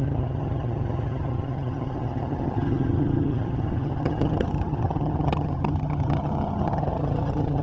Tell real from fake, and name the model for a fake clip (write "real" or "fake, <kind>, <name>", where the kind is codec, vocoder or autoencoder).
fake, vocoder, HiFi-GAN